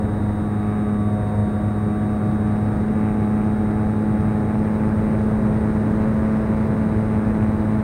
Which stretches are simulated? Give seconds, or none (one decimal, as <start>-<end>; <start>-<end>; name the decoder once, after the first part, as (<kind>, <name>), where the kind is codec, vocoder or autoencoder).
none

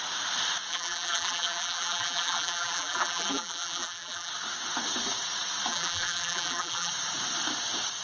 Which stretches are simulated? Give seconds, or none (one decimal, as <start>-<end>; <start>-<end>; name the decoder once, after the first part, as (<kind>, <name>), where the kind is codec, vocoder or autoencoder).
0.7-4.3 (vocoder, BigVGAN v2); 5.7-6.9

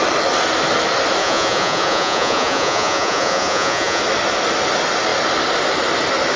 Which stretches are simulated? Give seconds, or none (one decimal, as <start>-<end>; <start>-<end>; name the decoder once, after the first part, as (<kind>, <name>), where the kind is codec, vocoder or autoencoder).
1.2-4.0 (vocoder, Vocos)